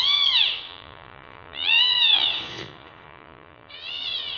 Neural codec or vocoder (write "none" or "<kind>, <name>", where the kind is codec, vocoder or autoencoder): vocoder, Vocos